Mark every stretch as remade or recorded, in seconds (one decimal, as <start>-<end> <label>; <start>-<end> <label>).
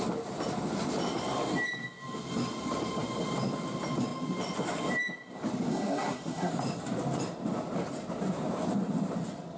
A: 0.0-5.7 recorded; 5.7-6.5 remade; 6.5-9.6 recorded